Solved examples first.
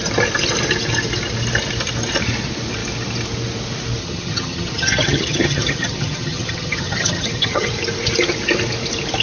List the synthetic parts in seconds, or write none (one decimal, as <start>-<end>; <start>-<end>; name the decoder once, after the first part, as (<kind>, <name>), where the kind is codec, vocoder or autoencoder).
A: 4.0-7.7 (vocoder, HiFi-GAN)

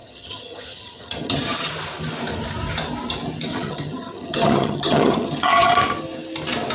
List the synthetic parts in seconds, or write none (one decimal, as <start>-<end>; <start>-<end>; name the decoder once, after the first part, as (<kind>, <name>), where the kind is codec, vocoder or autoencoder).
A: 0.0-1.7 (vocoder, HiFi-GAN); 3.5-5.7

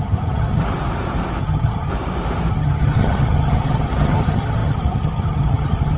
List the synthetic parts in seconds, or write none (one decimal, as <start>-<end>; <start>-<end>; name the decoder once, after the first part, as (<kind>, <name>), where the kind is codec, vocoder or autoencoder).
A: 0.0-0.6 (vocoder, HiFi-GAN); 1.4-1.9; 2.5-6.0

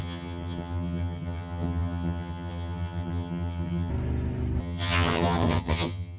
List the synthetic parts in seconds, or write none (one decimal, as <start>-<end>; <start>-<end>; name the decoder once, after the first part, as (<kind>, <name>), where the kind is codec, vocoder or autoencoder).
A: 0.0-3.9 (vocoder, HiFi-GAN); 4.6-6.2

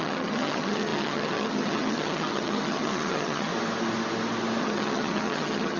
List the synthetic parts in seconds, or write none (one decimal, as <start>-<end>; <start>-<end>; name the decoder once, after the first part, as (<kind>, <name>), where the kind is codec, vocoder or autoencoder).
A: 0.0-3.5 (vocoder, HiFi-GAN); 4.6-5.8

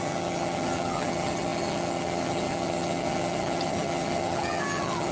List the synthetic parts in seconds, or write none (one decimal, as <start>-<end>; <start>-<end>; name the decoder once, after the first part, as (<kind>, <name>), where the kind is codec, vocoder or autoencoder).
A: 0.0-5.1 (vocoder, HiFi-GAN)

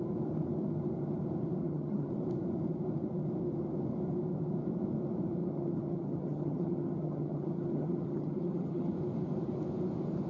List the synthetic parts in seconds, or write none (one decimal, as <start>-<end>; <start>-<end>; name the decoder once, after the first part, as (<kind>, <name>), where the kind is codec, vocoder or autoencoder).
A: 1.6-2.1 (vocoder, HiFi-GAN); 5.4-8.9

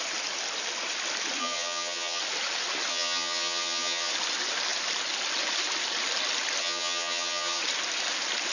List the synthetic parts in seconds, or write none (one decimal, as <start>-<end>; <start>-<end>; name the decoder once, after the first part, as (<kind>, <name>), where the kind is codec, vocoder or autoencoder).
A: 1.4-2.2 (vocoder, HiFi-GAN); 2.9-4.1; 6.6-7.6